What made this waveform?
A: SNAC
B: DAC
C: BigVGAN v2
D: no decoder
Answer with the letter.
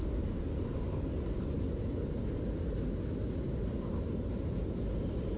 D